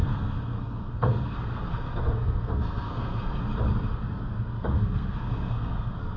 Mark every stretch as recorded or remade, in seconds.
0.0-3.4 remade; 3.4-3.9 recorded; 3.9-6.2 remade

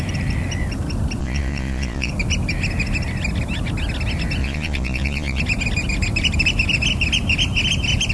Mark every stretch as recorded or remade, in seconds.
0.0-1.2 recorded; 1.2-2.1 remade; 2.1-4.4 recorded; 4.4-5.4 remade; 5.4-8.1 recorded